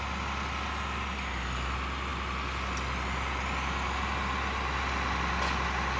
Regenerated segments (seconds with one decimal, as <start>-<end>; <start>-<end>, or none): none